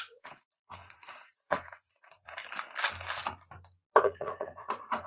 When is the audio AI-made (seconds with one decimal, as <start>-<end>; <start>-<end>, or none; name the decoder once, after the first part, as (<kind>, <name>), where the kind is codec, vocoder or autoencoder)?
0.0-2.4 (vocoder, Vocos); 4.0-5.1